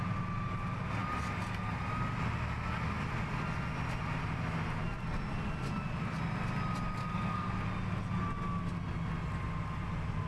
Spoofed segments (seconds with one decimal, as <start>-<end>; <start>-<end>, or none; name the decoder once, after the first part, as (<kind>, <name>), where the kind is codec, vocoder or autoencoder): 7.0-7.5 (codec, SNAC)